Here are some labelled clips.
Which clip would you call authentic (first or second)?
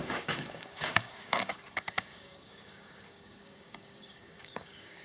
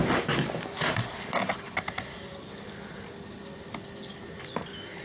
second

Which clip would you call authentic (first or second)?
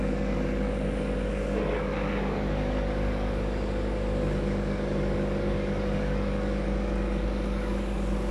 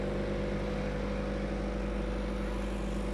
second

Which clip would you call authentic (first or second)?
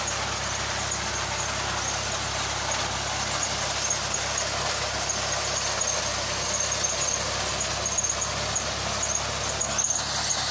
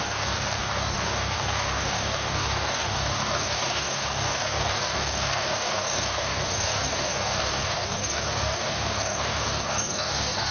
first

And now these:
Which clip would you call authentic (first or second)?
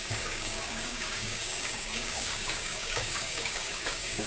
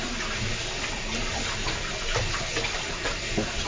second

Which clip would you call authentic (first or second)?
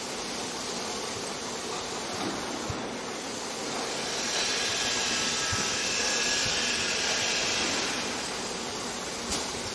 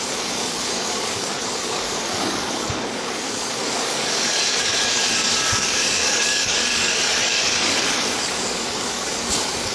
first